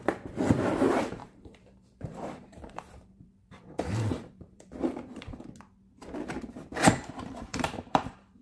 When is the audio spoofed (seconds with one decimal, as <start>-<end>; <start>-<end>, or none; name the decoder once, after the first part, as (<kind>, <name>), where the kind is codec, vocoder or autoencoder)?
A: 1.2-5.4 (vocoder, BigVGAN v2); 7.5-8.4